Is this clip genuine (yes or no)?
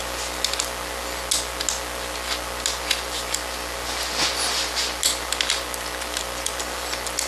yes